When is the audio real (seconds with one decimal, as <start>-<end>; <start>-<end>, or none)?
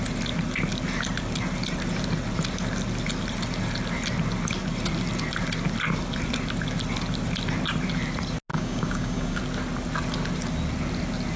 0.0-8.5; 9.4-11.4